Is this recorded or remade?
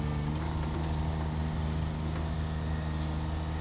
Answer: recorded